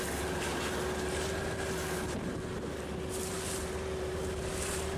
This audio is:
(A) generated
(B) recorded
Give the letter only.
B